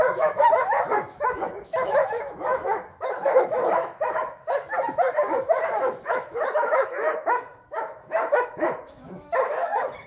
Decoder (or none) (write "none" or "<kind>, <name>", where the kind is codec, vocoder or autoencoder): autoencoder, DAC-VAE